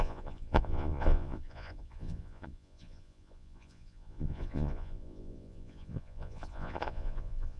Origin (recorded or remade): remade